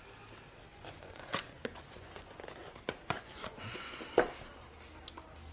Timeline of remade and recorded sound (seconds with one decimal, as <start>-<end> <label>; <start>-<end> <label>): 0.0-0.7 recorded; 0.7-4.0 remade; 4.0-5.5 recorded